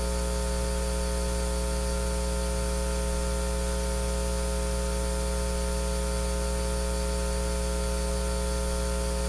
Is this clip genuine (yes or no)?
yes